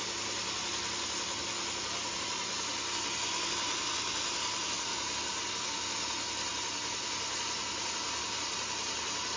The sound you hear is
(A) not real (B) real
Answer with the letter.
B